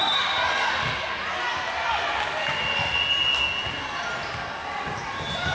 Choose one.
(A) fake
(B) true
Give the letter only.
B